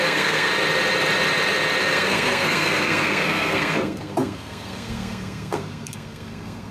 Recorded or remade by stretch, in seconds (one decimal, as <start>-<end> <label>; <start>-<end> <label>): 0.0-0.5 remade; 0.5-1.8 recorded; 1.8-6.7 remade